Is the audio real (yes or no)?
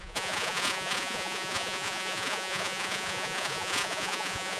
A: no